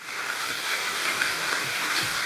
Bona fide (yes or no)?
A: no